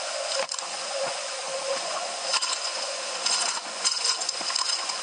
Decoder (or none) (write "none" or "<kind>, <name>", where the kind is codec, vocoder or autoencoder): vocoder, Vocos